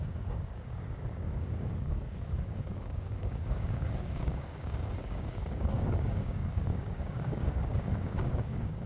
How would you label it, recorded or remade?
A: remade